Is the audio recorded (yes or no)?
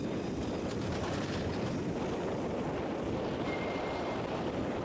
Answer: no